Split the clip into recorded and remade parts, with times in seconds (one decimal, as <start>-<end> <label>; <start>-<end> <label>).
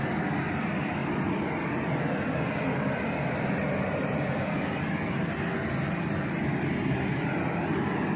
0.0-8.2 recorded